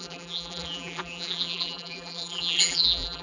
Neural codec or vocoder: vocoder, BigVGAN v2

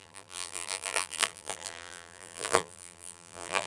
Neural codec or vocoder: vocoder, BigVGAN v2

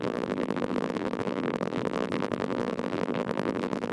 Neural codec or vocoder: vocoder, BigVGAN v2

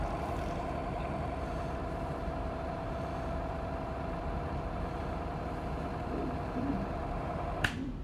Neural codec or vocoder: vocoder, BigVGAN v2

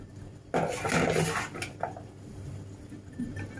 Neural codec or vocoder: none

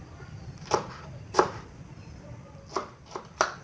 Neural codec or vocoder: none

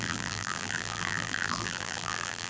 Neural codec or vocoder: vocoder, BigVGAN v2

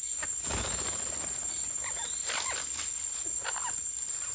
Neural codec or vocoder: vocoder, BigVGAN v2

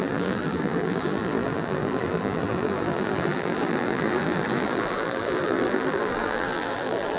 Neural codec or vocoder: vocoder, BigVGAN v2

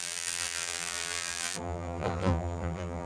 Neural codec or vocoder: vocoder, BigVGAN v2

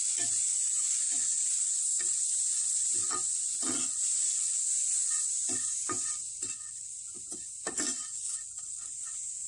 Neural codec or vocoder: none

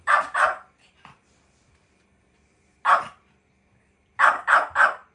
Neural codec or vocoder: vocoder, BigVGAN v2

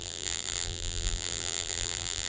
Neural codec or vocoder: vocoder, BigVGAN v2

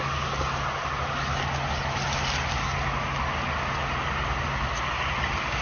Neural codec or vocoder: none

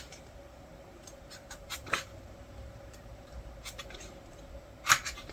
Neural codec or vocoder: vocoder, BigVGAN v2